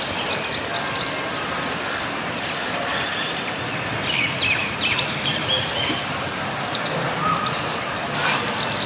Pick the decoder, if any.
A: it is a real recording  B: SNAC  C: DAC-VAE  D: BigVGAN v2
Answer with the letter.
D